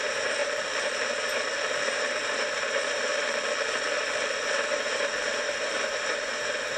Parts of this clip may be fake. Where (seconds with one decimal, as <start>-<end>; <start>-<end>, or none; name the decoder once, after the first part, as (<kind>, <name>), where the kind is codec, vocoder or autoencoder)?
0.0-0.4 (vocoder, BigVGAN v2); 1.7-3.1; 4.3-6.8